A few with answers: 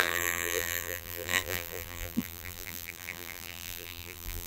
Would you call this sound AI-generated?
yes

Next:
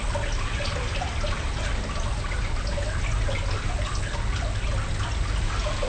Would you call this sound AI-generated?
no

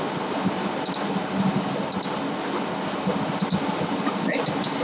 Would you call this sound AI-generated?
no